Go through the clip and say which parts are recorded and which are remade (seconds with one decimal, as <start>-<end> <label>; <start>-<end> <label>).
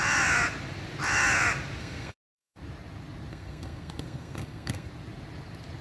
0.0-1.8 recorded; 1.8-2.6 remade; 2.6-3.3 recorded; 3.3-4.9 remade; 4.9-5.8 recorded